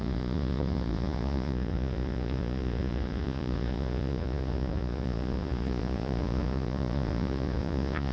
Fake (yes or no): yes